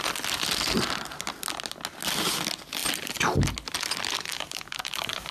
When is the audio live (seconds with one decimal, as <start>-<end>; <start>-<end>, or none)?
0.0-4.3